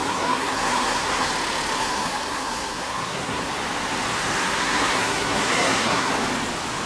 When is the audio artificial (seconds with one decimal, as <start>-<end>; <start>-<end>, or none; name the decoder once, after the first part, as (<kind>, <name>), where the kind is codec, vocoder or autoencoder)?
0.0-1.3 (codec, SNAC); 1.8-3.5; 4.4-6.1